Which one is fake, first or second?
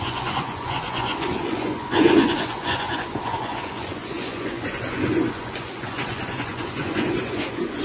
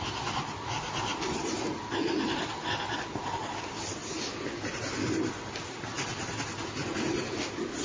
first